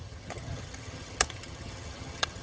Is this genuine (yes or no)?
no